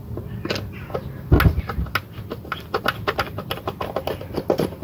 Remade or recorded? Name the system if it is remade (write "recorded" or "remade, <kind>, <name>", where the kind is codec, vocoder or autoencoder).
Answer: recorded